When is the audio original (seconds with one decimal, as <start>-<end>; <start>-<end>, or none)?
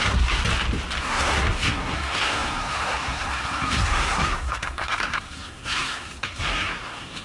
0.4-1.0